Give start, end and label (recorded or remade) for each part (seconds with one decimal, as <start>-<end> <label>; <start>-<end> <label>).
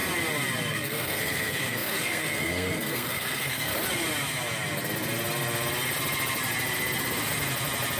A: 0.0-0.7 recorded; 0.7-3.7 remade; 3.7-8.0 recorded